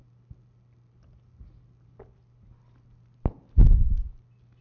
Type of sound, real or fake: real